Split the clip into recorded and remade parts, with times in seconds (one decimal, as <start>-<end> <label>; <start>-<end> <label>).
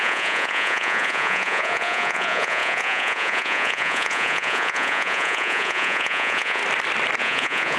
0.0-6.6 remade; 6.6-7.2 recorded; 7.2-7.8 remade